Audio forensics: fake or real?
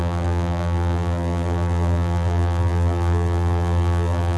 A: fake